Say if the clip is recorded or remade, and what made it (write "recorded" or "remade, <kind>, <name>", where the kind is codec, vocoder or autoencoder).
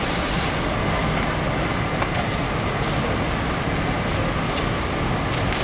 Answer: recorded